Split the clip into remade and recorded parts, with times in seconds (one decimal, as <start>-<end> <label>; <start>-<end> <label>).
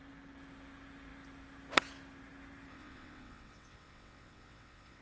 0.0-2.7 recorded; 2.7-5.0 remade